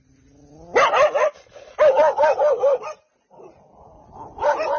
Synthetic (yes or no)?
no